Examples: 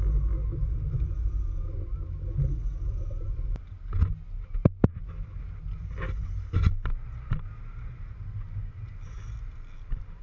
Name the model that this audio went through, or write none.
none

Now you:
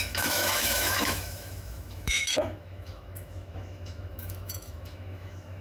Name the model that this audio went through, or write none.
autoencoder, DAC-VAE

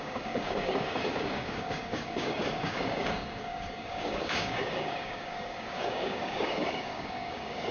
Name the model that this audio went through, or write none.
codec, DAC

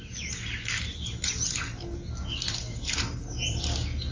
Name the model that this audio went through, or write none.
none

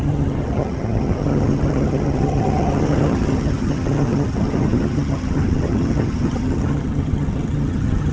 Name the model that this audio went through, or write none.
vocoder, HiFi-GAN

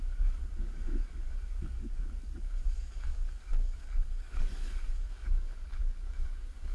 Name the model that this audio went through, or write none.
codec, DAC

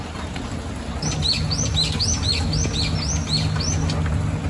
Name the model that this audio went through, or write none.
none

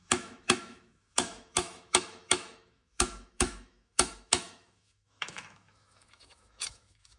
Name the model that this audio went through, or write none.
autoencoder, DAC-VAE